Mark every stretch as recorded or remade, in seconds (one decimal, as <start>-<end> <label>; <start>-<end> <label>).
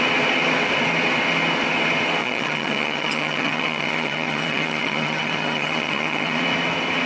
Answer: 0.0-2.2 recorded; 2.2-6.4 remade; 6.4-7.1 recorded